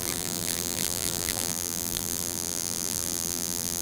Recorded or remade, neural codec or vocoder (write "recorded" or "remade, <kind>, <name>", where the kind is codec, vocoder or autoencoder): remade, vocoder, BigVGAN v2